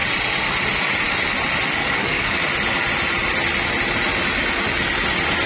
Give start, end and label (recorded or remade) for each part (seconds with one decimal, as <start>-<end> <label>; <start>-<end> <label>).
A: 0.0-1.8 recorded; 1.8-2.4 remade; 2.4-5.5 recorded